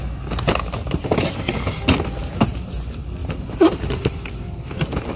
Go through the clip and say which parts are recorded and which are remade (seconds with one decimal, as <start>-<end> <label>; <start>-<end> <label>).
0.0-2.2 recorded; 2.2-2.7 remade; 2.7-3.2 recorded; 3.2-4.0 remade; 4.0-5.2 recorded